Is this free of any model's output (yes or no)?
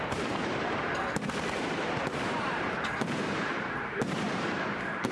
no